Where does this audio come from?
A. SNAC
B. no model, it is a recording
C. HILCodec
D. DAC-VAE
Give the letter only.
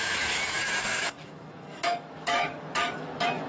D